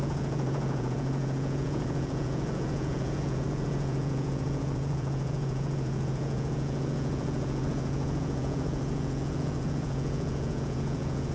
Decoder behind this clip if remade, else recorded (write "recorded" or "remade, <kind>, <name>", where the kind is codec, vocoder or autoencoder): remade, vocoder, Vocos